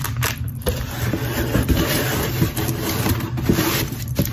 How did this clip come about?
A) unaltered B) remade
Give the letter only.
B